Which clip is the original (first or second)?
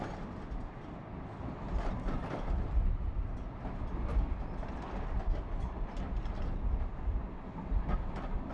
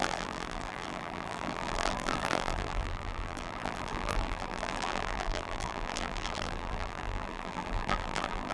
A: first